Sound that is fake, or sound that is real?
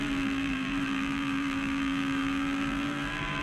fake